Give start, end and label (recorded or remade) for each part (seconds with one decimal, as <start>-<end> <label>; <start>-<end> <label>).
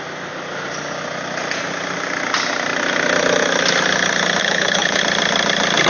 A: 0.0-4.4 recorded; 4.4-5.0 remade; 5.0-5.9 recorded